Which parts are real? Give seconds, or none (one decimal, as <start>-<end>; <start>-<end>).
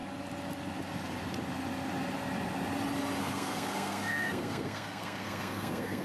0.0-3.2